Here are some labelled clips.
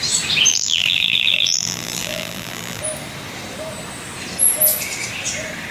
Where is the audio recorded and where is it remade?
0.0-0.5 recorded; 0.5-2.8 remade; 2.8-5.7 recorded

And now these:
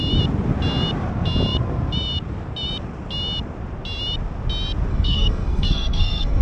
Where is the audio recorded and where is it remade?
0.0-4.9 recorded; 4.9-6.4 remade

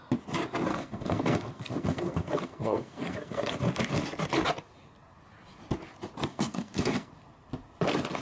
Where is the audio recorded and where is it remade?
0.0-0.7 recorded; 0.7-3.6 remade; 3.6-6.3 recorded; 6.3-7.1 remade; 7.1-8.2 recorded

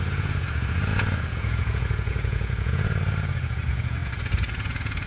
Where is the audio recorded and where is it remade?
0.0-5.1 remade

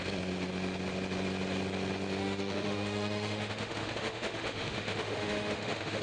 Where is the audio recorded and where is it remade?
0.0-2.2 recorded; 2.2-6.0 remade

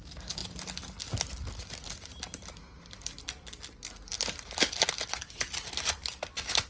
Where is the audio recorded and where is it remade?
0.0-6.7 recorded

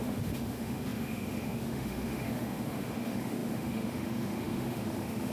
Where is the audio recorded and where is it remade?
0.0-5.3 remade